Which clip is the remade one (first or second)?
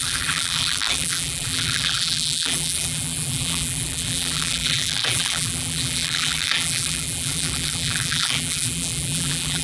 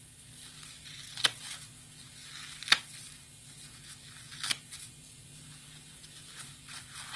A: first